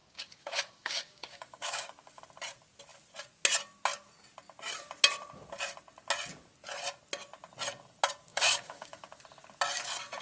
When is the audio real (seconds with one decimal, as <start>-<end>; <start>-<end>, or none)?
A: 2.2-8.3; 9.2-10.2

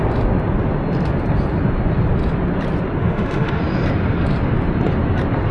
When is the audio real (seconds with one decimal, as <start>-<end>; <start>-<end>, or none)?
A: 0.0-3.0; 3.6-5.5